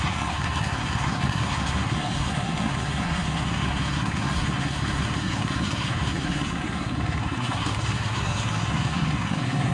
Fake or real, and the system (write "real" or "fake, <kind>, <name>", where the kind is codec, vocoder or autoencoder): fake, codec, SNAC